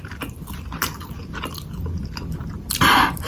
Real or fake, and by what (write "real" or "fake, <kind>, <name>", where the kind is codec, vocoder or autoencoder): real